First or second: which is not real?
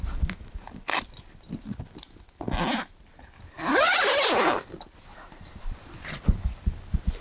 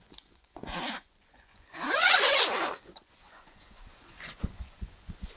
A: second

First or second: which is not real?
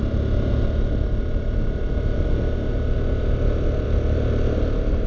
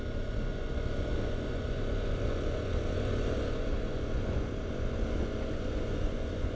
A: second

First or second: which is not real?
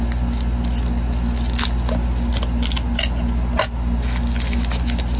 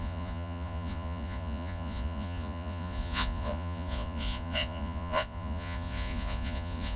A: second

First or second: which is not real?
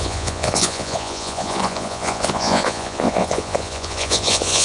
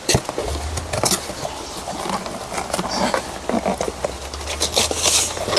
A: first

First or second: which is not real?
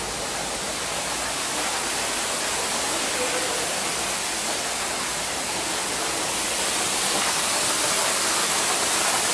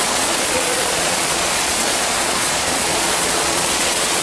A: second